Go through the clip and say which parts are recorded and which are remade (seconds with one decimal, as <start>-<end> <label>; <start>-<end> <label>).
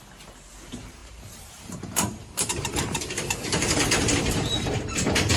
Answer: 0.0-5.4 remade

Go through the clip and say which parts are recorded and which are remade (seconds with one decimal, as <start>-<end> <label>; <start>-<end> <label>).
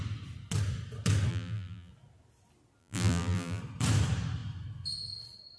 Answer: 0.0-1.3 recorded; 1.3-1.9 remade; 1.9-2.8 recorded; 2.8-3.6 remade; 3.6-5.6 recorded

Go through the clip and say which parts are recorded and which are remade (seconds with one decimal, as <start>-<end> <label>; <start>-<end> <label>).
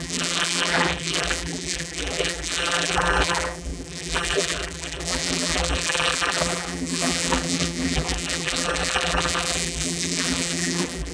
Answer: 0.0-11.1 remade